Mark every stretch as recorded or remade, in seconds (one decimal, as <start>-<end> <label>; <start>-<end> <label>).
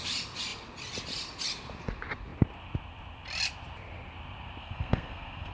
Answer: 0.0-4.6 recorded; 4.6-5.5 remade